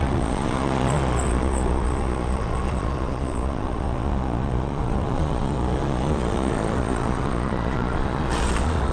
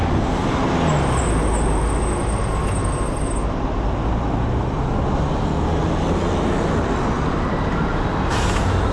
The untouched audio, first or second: second